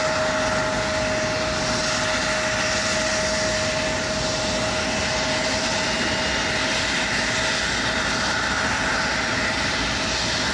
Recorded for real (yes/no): yes